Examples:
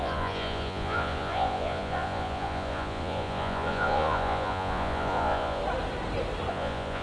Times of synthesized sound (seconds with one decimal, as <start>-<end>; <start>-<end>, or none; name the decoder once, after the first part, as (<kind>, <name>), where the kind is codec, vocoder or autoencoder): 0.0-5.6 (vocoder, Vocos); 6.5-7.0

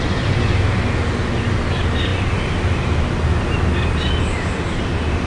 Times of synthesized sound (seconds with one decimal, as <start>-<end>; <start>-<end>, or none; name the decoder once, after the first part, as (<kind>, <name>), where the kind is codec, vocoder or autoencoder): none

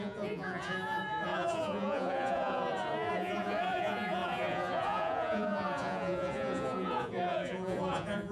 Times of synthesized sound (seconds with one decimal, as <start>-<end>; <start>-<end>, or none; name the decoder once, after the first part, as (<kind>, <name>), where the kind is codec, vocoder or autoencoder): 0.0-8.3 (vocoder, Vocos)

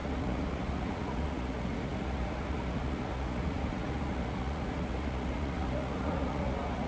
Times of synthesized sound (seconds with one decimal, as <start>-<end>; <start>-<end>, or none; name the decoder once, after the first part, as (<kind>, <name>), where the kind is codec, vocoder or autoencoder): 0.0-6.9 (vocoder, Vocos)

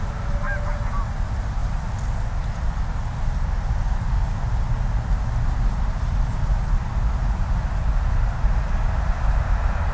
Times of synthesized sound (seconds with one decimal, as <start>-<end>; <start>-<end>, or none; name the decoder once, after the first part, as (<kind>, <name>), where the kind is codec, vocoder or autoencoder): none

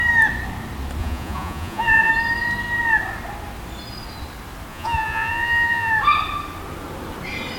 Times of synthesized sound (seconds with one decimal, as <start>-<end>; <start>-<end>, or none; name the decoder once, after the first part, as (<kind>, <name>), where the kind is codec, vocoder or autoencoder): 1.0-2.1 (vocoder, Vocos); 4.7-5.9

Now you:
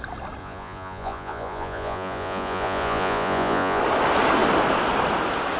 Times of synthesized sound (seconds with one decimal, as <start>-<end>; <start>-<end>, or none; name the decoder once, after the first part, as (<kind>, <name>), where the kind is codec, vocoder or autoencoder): 0.4-3.8 (vocoder, Vocos)

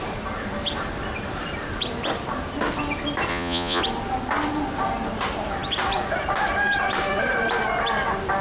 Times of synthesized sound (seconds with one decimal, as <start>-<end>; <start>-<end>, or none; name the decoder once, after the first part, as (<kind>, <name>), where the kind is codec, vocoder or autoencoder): 3.3-3.8 (vocoder, Vocos)